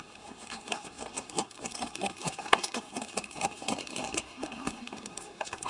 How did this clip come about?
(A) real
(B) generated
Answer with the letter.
B